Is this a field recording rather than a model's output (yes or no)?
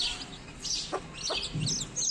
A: yes